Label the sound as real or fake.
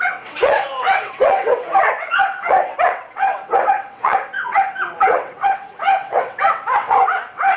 fake